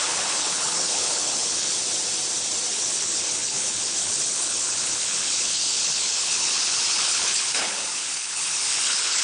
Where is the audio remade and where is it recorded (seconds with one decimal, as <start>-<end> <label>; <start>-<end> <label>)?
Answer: 0.0-1.7 remade; 1.7-2.7 recorded; 2.7-9.2 remade